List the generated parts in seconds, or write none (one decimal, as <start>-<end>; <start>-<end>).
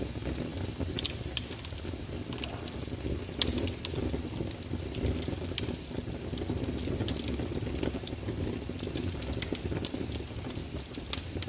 none